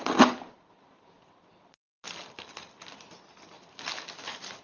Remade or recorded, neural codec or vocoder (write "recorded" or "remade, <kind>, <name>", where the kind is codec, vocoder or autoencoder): recorded